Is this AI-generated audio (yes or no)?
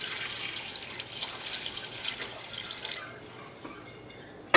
no